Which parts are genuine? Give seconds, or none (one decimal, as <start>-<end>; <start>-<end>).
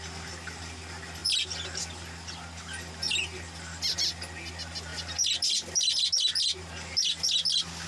0.0-7.9